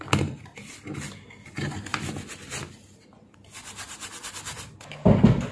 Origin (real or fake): real